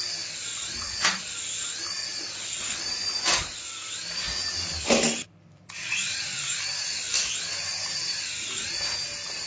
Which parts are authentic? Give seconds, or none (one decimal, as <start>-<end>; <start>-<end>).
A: 0.0-0.5; 1.2-2.0; 2.8-5.8; 6.5-9.5

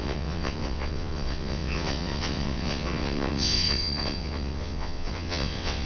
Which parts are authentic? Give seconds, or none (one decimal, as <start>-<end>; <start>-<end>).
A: none

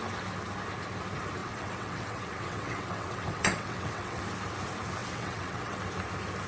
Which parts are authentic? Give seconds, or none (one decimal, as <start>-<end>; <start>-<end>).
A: 0.0-1.4; 4.2-5.0; 5.8-6.5

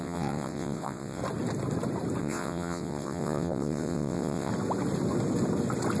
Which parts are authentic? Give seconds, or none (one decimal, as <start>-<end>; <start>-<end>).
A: 1.2-2.2; 4.5-6.0

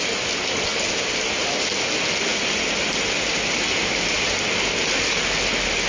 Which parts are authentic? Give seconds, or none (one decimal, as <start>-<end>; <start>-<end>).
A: 0.0-5.9

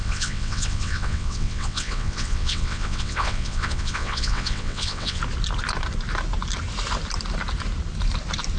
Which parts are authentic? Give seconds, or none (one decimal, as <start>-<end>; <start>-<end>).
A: 5.2-8.6

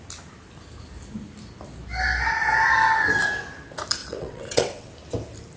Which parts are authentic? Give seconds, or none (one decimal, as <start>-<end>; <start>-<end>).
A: 0.0-4.0; 4.9-5.6